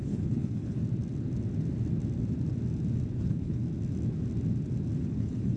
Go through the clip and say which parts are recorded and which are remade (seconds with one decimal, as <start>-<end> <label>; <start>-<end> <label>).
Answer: 0.0-0.8 remade; 0.8-3.2 recorded; 3.2-3.6 remade; 3.6-5.0 recorded; 5.0-5.6 remade